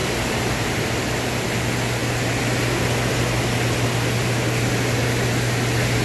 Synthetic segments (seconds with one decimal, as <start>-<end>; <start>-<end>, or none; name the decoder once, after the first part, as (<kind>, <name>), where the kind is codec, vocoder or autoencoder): 0.0-0.9 (vocoder, BigVGAN v2)